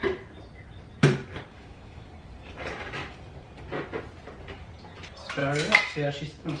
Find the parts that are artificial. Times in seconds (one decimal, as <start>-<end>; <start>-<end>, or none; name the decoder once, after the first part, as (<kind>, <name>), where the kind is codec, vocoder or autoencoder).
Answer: 1.5-2.1 (autoencoder, DAC-VAE); 5.4-6.6

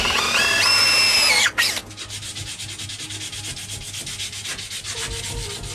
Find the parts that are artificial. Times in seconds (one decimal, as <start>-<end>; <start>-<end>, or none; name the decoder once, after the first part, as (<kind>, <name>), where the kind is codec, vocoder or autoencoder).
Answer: none

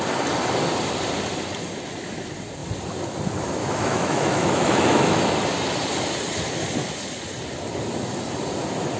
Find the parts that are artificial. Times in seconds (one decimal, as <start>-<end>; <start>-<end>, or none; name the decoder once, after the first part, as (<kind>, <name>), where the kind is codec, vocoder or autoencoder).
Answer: 3.6-5.2 (autoencoder, DAC-VAE)

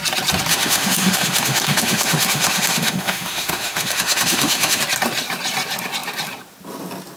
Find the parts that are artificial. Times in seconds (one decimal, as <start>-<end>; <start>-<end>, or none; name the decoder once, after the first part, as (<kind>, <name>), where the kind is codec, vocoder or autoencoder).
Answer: 0.5-4.8 (autoencoder, DAC-VAE)

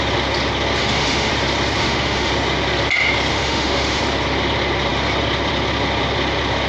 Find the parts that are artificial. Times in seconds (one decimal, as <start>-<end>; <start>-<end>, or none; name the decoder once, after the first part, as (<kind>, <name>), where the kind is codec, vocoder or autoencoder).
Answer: 0.8-1.3 (autoencoder, DAC-VAE); 1.8-2.3; 3.3-4.0

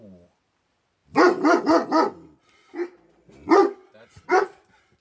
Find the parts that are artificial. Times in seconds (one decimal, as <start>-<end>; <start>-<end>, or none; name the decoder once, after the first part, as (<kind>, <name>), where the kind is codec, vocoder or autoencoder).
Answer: none